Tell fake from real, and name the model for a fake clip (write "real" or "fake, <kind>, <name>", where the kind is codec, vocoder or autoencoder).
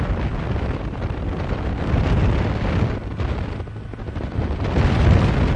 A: real